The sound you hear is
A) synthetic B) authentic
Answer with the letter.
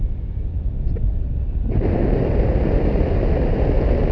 B